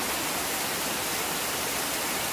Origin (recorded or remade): recorded